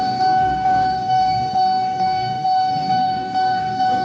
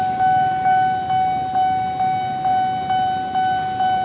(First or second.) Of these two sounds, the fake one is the first